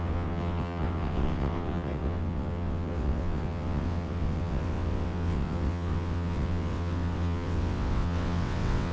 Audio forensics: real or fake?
fake